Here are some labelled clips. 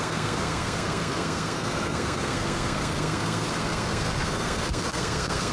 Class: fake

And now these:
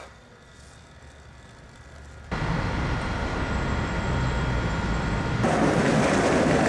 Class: real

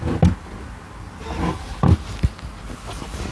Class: real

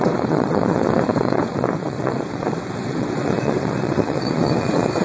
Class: fake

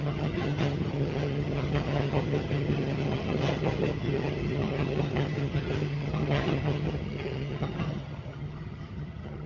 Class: fake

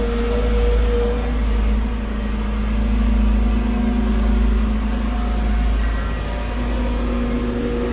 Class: real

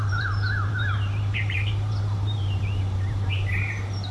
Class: fake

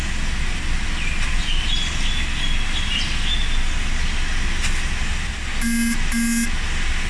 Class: real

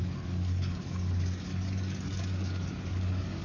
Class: fake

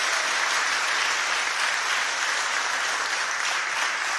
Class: real